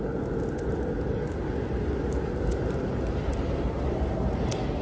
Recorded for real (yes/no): yes